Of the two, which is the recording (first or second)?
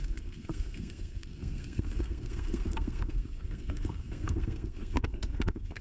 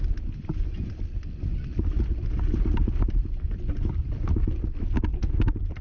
second